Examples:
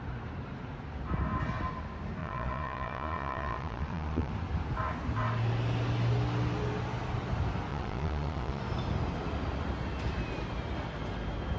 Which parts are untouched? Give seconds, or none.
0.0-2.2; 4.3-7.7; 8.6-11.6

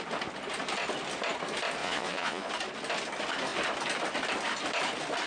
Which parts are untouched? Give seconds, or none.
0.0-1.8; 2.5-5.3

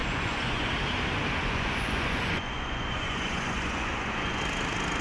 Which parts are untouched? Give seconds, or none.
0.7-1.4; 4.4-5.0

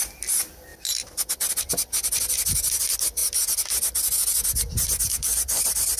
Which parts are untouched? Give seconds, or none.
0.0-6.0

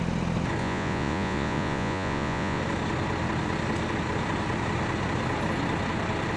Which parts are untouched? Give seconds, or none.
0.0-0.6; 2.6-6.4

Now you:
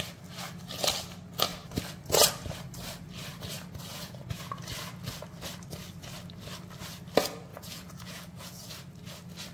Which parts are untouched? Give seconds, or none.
0.0-3.9; 4.4-7.5; 8.7-9.5